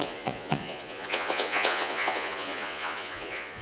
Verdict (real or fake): fake